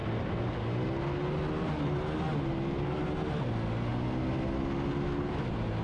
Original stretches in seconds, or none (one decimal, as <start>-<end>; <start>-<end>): 0.0-5.8